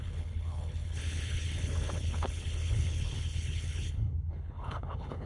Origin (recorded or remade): remade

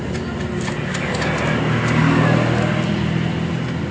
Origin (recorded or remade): recorded